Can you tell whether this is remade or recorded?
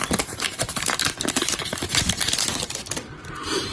remade